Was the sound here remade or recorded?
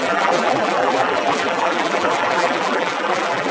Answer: remade